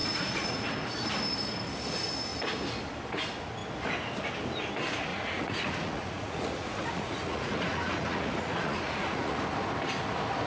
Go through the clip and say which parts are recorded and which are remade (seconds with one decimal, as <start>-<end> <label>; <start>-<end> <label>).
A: 0.0-0.7 remade; 0.7-5.1 recorded; 5.1-9.4 remade; 9.4-10.5 recorded